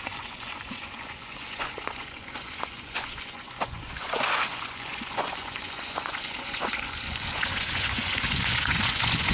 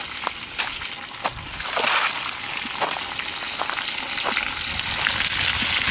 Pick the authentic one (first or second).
second